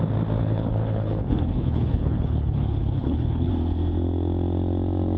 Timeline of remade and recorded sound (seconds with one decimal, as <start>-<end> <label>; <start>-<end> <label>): 0.0-0.4 recorded; 0.4-3.5 remade; 3.5-5.2 recorded